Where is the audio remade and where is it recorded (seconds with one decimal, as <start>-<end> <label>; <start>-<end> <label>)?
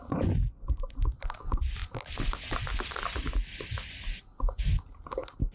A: 0.0-5.5 recorded